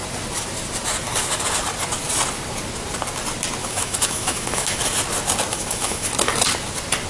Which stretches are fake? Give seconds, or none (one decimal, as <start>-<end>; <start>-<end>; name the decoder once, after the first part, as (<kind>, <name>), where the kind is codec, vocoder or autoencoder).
3.6-4.8 (autoencoder, DAC-VAE); 5.5-6.1